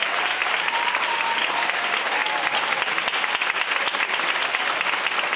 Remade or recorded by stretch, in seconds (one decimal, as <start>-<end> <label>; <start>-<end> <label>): 0.0-0.4 recorded; 0.4-1.3 remade; 1.3-2.2 recorded; 2.2-4.9 remade; 4.9-5.4 recorded